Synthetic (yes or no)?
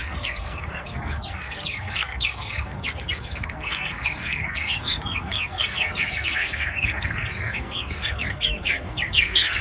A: yes